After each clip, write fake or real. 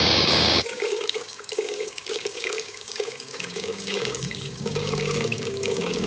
fake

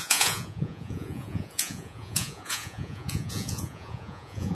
fake